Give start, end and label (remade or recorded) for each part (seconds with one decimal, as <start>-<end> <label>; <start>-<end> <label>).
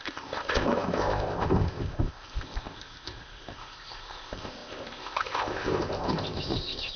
0.0-7.0 remade